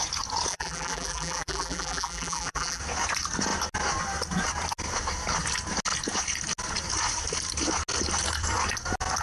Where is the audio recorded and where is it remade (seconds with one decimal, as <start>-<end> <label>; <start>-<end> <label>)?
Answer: 0.0-0.5 recorded; 0.5-2.8 remade; 2.8-9.2 recorded